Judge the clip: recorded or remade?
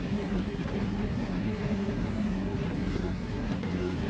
remade